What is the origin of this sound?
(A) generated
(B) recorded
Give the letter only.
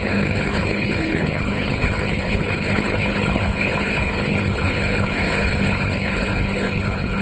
A